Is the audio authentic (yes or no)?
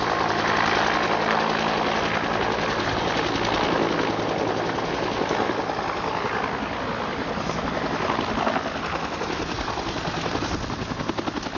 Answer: yes